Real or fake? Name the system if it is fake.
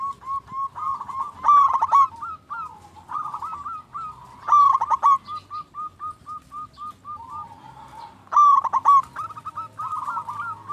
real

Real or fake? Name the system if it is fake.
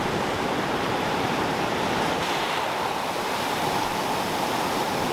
fake, vocoder, BigVGAN v2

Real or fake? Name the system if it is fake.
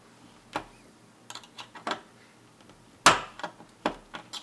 real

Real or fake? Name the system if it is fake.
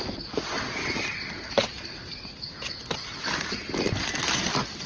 real